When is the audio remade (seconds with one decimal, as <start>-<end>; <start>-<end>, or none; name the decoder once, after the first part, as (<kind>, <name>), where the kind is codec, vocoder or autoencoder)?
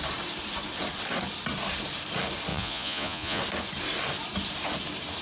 2.5-3.4 (vocoder, Vocos)